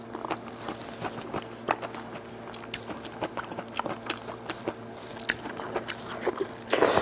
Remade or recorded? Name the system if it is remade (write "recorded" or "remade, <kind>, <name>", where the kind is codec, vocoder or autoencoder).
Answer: recorded